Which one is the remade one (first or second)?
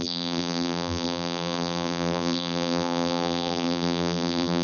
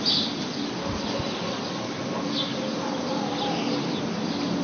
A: first